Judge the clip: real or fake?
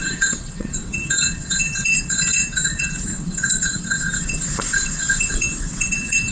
fake